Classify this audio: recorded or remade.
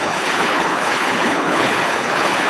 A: remade